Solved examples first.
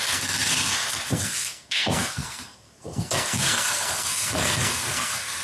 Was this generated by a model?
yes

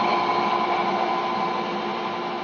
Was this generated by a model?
no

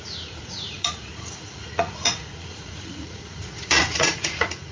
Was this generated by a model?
yes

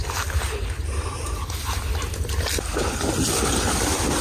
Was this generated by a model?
no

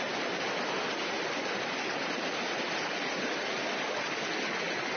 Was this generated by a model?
no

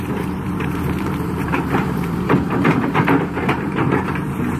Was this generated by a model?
yes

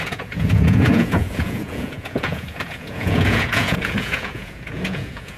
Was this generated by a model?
yes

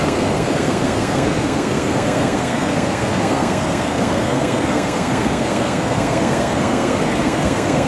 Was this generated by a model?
yes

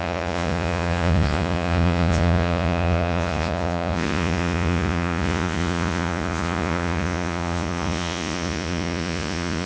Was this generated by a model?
yes